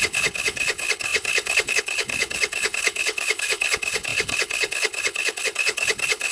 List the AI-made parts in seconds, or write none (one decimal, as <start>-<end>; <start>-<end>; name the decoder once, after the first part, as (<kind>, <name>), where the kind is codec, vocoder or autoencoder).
0.0-6.3 (codec, HILCodec)